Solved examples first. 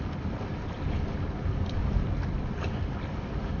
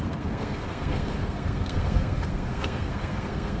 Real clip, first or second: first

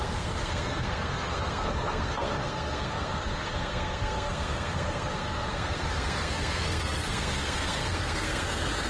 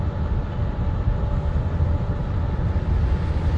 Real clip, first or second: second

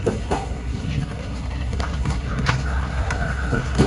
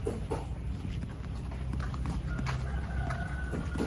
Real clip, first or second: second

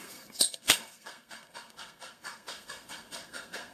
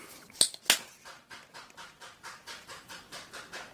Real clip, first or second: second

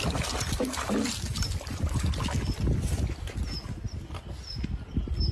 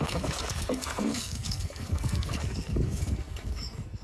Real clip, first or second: first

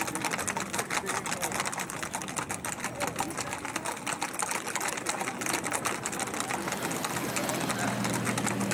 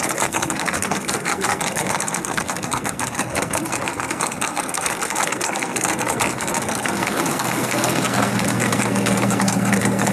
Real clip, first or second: first